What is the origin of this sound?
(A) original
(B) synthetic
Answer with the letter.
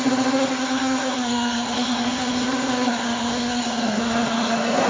B